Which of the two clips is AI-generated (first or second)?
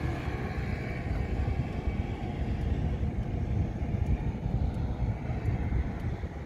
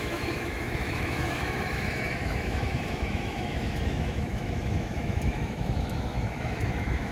second